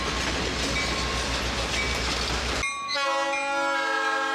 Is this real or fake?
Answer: real